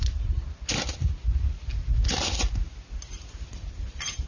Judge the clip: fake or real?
real